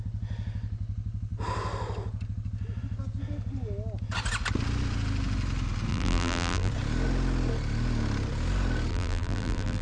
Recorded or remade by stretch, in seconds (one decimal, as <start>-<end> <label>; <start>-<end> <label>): 0.0-5.9 recorded; 5.9-6.7 remade; 6.7-8.9 recorded; 8.9-9.8 remade